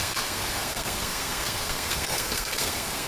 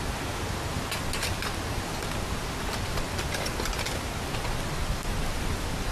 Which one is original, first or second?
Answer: second